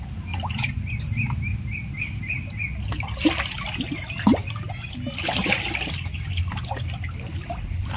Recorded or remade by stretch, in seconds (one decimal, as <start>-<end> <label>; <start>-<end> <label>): 0.0-8.0 recorded